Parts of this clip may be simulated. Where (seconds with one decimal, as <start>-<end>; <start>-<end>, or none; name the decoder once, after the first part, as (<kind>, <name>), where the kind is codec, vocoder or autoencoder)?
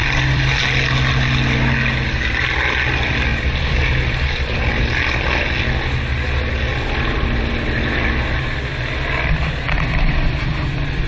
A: 0.0-0.6 (vocoder, BigVGAN v2)